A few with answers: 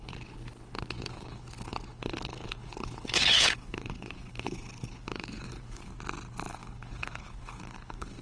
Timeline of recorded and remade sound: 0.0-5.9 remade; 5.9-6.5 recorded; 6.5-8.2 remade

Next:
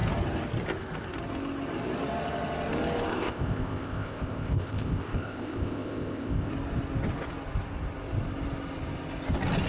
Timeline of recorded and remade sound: 0.0-3.1 recorded; 3.1-6.5 remade; 6.5-9.7 recorded

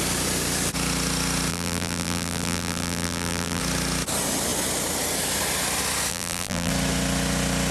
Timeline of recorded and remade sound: 0.0-1.5 recorded; 1.5-3.6 remade; 3.6-6.1 recorded; 6.1-6.7 remade; 6.7-7.7 recorded

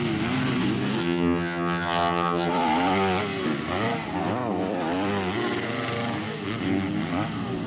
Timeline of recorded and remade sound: 0.0-1.0 recorded; 1.0-2.5 remade; 2.5-7.7 recorded

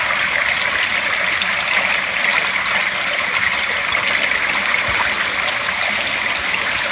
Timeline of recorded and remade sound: 0.0-6.9 recorded